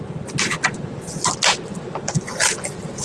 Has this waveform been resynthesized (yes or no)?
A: no